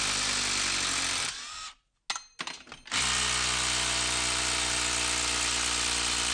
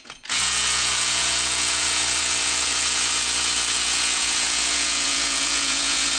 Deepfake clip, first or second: second